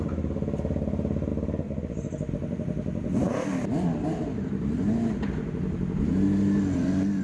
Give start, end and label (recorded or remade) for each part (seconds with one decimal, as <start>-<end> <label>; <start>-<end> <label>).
0.0-7.2 recorded